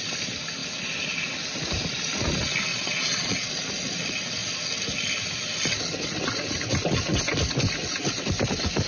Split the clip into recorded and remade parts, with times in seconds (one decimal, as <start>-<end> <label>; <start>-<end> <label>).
0.0-2.7 recorded; 2.7-3.5 remade; 3.5-8.9 recorded